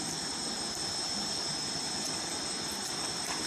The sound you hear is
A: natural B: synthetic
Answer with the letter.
A